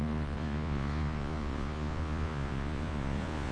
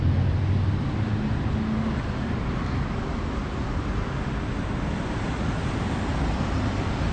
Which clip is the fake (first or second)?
first